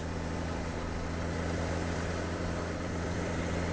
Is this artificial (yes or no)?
yes